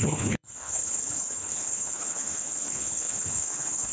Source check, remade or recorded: remade